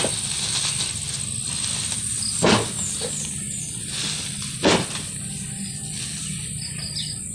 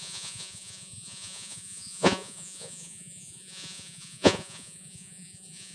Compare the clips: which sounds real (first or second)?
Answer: first